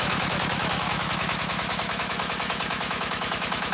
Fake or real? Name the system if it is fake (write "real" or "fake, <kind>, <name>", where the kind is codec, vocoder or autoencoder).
fake, autoencoder, DAC-VAE